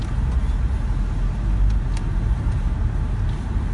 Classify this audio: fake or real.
real